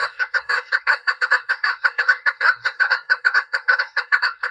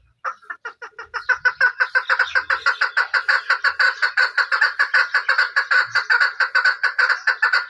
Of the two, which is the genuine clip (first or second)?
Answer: second